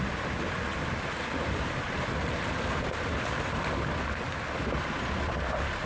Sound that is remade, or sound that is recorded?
recorded